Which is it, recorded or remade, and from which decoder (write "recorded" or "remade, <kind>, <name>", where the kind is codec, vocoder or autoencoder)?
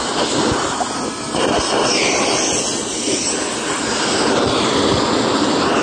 recorded